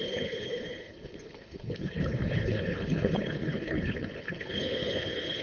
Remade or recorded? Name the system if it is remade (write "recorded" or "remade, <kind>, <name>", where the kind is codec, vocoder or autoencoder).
remade, codec, HILCodec